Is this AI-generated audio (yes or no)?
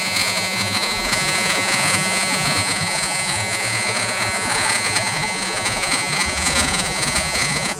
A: yes